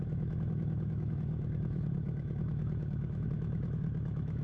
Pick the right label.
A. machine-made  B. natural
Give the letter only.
A